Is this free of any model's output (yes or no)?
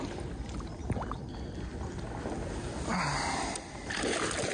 yes